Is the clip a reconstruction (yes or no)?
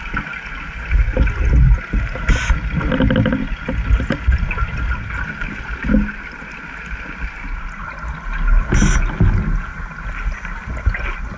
no